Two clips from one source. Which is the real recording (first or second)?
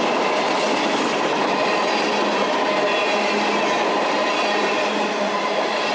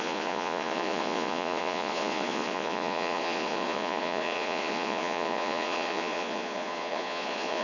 first